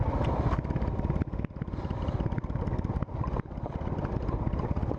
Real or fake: real